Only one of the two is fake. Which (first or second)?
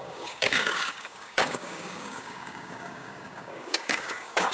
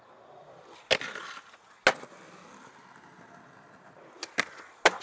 first